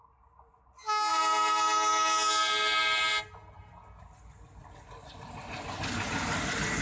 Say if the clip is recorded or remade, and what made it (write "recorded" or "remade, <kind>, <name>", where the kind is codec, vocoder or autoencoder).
recorded